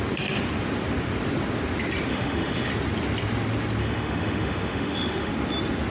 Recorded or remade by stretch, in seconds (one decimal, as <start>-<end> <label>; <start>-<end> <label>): 0.0-2.1 recorded; 2.1-2.7 remade; 2.7-3.8 recorded; 3.8-5.3 remade; 5.3-5.9 recorded